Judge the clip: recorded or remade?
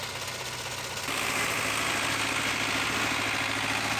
recorded